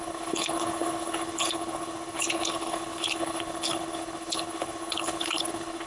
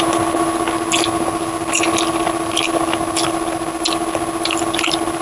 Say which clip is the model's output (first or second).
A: first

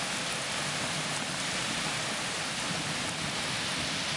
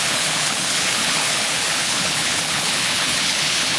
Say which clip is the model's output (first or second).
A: second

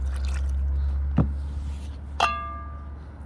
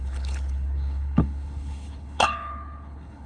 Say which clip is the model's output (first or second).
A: second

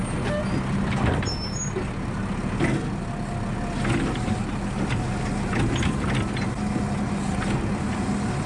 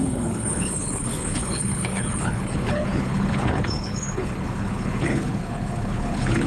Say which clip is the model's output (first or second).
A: second